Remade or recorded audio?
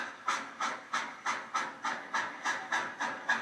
recorded